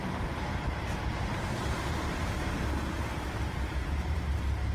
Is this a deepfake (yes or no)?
yes